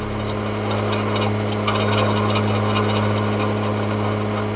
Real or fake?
real